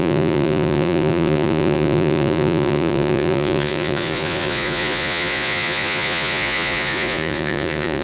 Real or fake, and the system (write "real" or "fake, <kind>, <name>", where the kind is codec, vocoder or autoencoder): fake, vocoder, Vocos